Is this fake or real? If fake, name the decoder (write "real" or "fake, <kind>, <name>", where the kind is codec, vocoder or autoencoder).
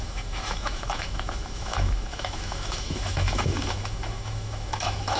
fake, autoencoder, DAC-VAE